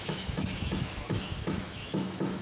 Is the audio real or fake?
fake